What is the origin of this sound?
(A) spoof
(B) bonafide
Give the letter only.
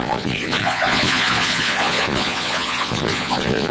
A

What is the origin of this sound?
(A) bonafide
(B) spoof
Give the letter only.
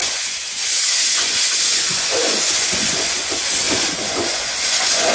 B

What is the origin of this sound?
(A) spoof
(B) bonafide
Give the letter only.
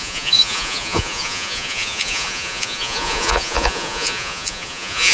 A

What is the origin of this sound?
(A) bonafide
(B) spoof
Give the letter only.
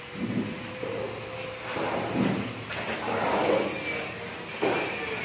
A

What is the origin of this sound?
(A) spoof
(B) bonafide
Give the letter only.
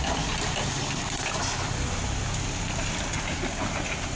B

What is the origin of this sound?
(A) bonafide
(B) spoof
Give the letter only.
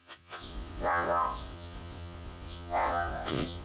B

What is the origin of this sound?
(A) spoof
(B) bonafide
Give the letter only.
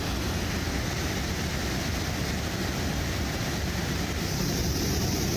B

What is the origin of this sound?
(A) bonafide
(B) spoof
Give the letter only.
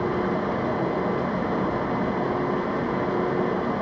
A